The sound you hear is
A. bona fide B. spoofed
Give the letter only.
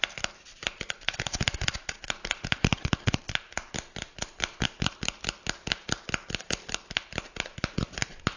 A